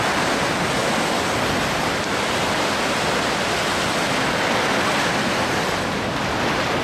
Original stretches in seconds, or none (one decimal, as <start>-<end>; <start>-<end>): 0.0-6.8